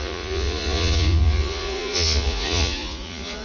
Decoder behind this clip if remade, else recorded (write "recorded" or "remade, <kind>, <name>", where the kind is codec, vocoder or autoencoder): remade, vocoder, Vocos